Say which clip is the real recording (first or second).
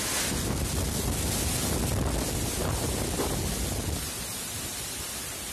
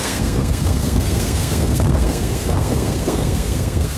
first